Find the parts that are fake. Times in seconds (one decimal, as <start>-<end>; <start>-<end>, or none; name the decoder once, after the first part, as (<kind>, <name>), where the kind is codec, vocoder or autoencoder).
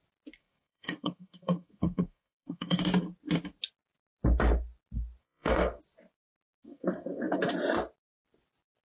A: 0.4-2.8 (codec, SNAC); 5.2-5.8; 6.6-7.5